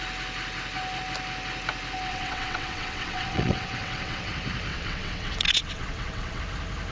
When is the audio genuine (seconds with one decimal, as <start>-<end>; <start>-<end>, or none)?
0.0-2.1; 4.3-4.7; 6.4-6.9